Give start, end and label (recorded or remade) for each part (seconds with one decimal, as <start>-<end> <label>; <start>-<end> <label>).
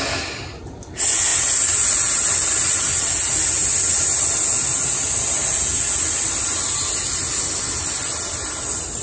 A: 0.0-9.0 recorded